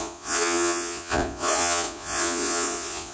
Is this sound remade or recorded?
remade